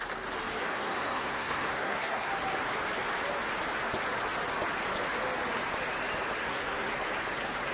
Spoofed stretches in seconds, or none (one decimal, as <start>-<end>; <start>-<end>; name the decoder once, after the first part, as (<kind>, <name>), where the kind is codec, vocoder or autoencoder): 0.6-2.3 (codec, SNAC); 6.4-6.9